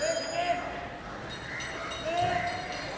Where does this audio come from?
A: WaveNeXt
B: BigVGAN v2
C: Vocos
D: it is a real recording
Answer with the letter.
D